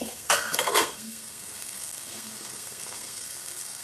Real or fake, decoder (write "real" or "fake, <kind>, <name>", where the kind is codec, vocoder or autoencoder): fake, codec, SNAC